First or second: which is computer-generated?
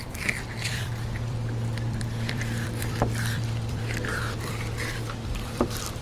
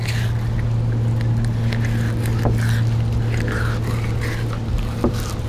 first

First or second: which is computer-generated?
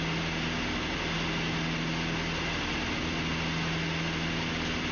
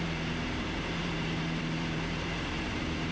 second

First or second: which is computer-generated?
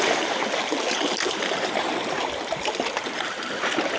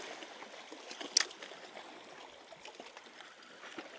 first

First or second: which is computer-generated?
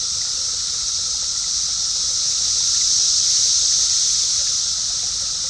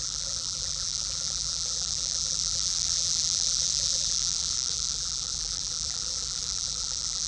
second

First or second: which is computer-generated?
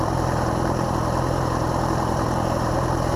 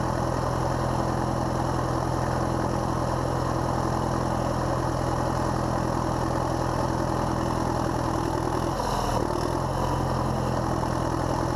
first